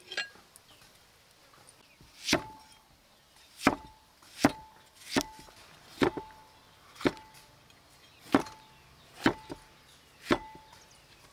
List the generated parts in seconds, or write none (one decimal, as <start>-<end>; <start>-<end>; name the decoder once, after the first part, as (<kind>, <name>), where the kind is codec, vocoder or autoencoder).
none